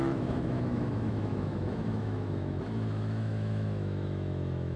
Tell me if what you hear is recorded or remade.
remade